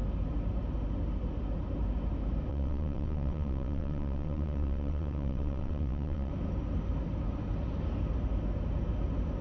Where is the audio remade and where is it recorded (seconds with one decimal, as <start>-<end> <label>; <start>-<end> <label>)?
0.0-2.5 recorded; 2.5-6.3 remade; 6.3-9.4 recorded

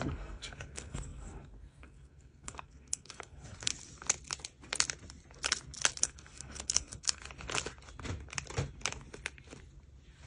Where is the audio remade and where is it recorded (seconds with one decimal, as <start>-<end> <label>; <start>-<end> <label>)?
0.0-3.7 remade; 3.7-6.0 recorded; 6.0-7.2 remade; 7.2-10.3 recorded

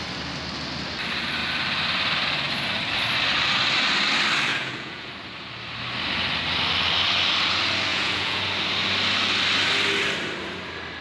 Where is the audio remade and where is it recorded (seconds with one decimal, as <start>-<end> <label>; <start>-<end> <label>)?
0.0-4.5 recorded; 4.5-5.1 remade; 5.1-7.9 recorded; 7.9-8.4 remade; 8.4-11.0 recorded

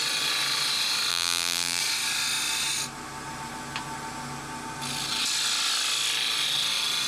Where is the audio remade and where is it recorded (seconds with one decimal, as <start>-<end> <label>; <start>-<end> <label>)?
0.0-1.1 recorded; 1.1-1.8 remade; 1.8-7.1 recorded

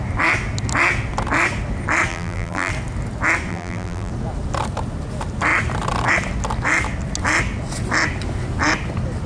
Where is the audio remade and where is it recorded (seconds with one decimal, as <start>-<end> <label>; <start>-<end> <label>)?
0.0-2.1 recorded; 2.1-2.7 remade; 2.7-3.5 recorded; 3.5-4.1 remade; 4.1-9.3 recorded

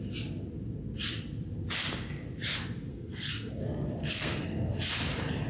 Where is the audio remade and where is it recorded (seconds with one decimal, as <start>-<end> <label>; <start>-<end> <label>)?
0.0-2.9 recorded; 2.9-3.6 remade; 3.6-4.0 recorded; 4.0-4.8 remade; 4.8-5.5 recorded